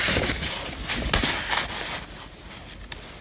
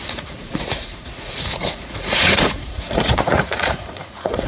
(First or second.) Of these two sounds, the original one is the first